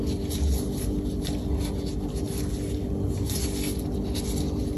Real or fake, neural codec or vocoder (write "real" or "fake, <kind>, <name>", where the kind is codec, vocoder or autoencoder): real